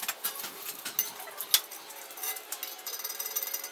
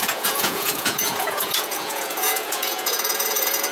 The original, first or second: first